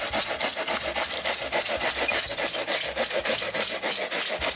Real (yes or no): yes